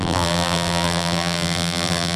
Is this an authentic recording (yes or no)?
no